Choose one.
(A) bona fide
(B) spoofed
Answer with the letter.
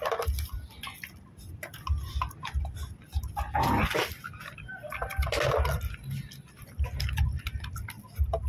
A